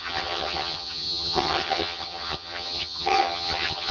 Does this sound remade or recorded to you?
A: remade